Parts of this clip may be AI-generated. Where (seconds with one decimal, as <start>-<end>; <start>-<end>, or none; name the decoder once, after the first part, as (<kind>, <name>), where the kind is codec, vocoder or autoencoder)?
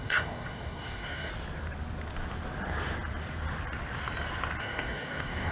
0.0-1.3 (codec, DAC); 4.6-5.5